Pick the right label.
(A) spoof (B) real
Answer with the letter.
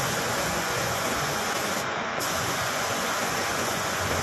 A